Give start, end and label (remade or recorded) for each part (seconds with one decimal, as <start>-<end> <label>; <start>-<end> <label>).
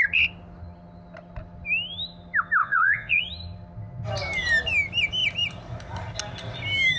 0.0-2.6 recorded; 2.6-3.2 remade; 3.2-7.0 recorded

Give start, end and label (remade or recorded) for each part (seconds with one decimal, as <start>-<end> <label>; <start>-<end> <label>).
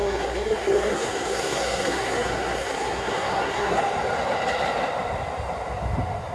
0.0-3.8 remade; 3.8-6.3 recorded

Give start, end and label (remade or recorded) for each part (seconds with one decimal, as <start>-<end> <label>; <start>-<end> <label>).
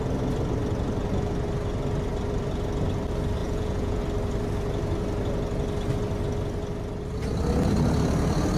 0.0-3.4 recorded; 3.4-4.0 remade; 4.0-8.6 recorded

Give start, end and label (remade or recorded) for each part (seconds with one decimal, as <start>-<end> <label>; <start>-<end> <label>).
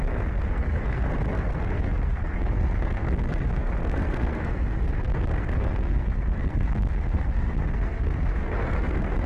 0.0-9.3 remade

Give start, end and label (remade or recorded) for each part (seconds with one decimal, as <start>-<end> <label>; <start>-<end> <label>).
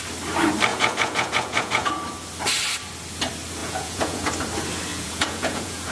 0.0-0.7 recorded; 0.7-1.9 remade; 1.9-3.6 recorded; 3.6-4.3 remade; 4.3-4.9 recorded; 4.9-5.9 remade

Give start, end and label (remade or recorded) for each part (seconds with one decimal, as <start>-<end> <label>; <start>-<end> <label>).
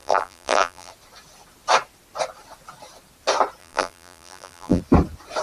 0.0-0.9 remade; 0.9-3.6 recorded; 3.6-4.8 remade; 4.8-5.4 recorded